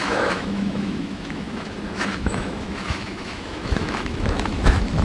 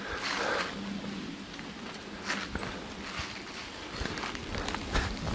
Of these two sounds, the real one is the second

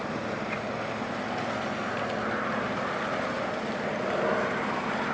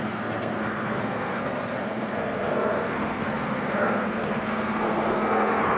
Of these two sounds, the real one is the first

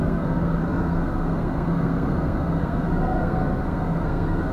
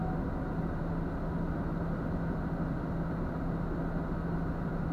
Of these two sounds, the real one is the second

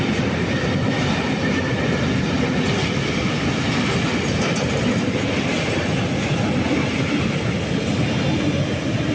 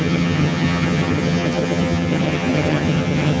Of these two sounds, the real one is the first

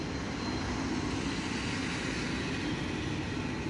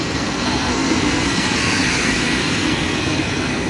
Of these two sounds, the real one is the first